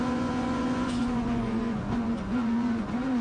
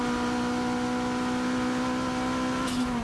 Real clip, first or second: second